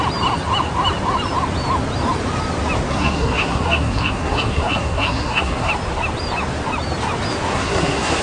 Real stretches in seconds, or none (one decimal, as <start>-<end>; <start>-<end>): 0.0-2.9; 5.7-7.5